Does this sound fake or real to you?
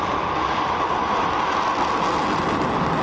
real